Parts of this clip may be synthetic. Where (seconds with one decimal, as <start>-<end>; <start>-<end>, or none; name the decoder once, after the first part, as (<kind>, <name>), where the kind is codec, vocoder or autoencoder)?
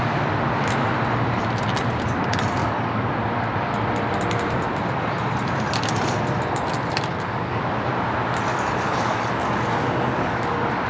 2.6-3.1 (codec, DAC); 7.1-7.6; 8.5-10.4